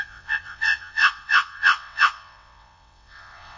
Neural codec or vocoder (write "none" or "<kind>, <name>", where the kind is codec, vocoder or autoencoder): vocoder, WaveNeXt